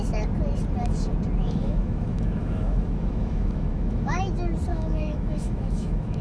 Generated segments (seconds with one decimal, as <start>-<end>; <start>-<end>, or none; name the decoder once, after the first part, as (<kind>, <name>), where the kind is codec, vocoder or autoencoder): 1.4-4.2 (autoencoder, DAC-VAE); 4.7-6.2